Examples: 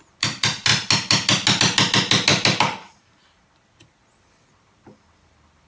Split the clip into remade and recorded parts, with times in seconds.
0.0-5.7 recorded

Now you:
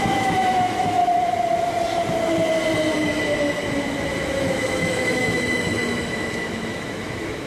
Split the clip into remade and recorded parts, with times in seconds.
0.0-1.0 remade; 1.0-4.1 recorded; 4.1-7.5 remade

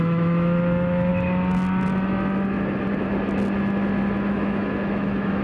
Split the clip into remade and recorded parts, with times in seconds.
0.0-1.1 remade; 1.1-4.3 recorded; 4.3-5.4 remade

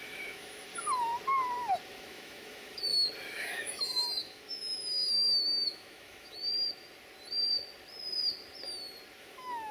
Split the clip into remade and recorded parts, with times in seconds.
0.0-0.7 remade; 0.7-1.9 recorded; 1.9-2.9 remade; 2.9-3.4 recorded; 3.4-6.4 remade; 6.4-9.2 recorded; 9.2-9.7 remade

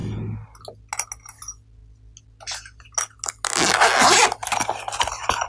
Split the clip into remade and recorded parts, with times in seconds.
0.0-5.5 recorded